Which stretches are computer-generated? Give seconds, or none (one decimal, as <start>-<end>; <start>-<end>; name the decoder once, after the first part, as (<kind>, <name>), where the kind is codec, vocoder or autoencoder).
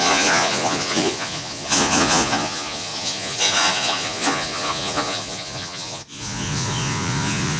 0.0-7.6 (vocoder, Vocos)